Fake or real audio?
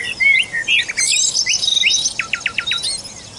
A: real